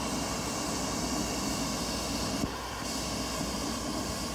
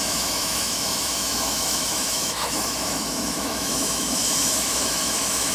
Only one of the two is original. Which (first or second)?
first